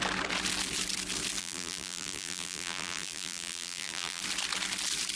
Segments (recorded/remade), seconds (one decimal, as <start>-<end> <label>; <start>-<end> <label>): 0.0-1.4 recorded; 1.4-4.2 remade; 4.2-5.2 recorded